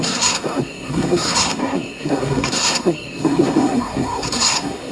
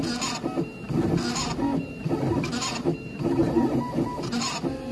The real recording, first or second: second